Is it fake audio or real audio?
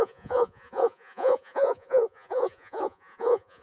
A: fake